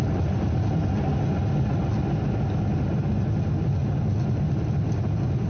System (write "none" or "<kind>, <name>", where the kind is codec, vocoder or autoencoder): none